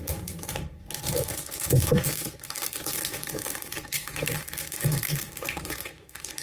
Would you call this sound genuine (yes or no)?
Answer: no